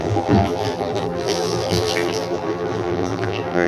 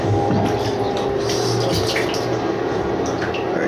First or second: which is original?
second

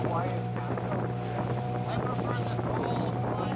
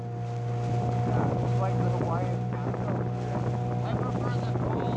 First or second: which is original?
second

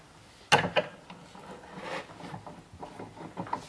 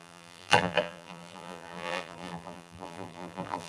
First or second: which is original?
first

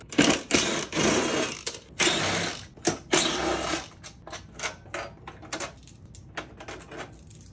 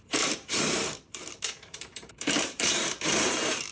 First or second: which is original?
first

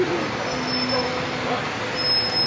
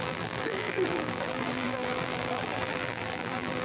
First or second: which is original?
first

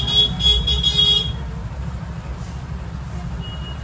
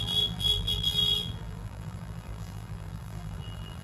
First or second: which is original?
first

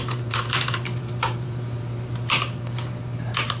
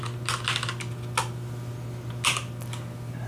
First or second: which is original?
second